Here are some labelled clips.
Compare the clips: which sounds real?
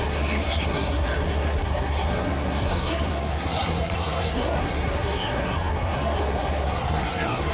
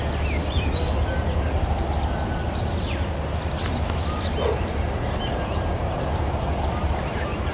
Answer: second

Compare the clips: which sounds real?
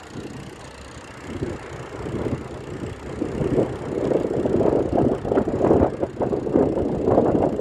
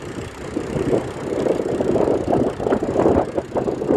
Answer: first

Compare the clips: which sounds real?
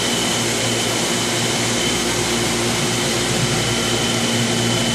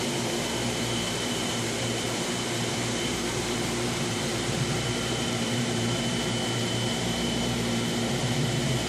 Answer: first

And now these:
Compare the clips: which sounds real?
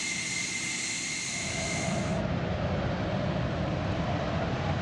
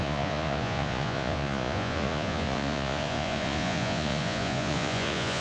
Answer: first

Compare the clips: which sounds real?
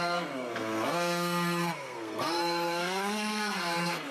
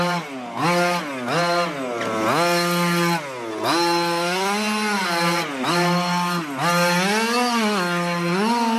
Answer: second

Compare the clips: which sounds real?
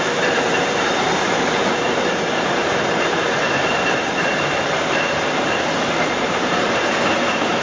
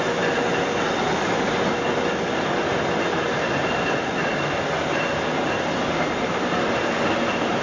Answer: second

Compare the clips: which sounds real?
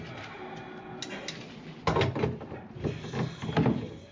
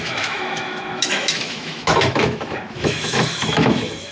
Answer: first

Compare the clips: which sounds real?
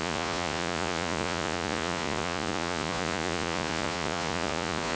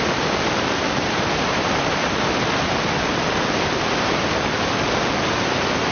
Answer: second